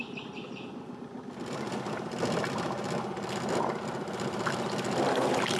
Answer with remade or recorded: remade